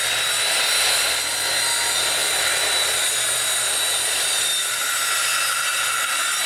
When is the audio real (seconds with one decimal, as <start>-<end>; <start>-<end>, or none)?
0.0-6.5